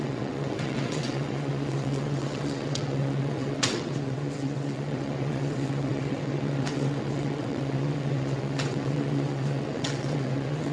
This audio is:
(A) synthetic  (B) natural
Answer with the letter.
A